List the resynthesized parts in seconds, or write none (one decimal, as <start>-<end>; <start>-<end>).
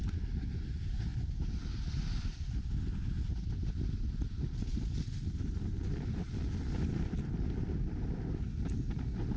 none